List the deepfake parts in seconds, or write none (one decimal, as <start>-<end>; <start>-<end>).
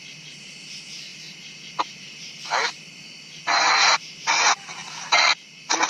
none